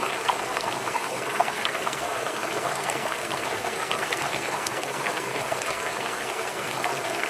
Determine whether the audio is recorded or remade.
remade